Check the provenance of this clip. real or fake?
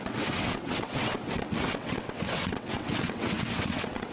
fake